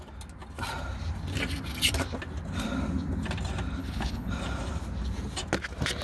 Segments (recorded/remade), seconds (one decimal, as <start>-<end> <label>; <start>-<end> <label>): 0.0-3.8 recorded; 3.8-4.3 remade; 4.3-6.0 recorded